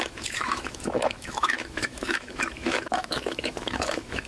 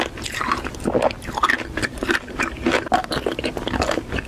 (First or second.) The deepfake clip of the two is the first